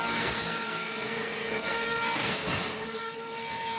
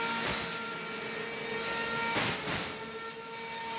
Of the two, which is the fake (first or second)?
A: first